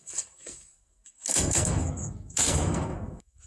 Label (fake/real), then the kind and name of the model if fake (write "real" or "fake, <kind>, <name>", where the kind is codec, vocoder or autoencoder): fake, codec, SNAC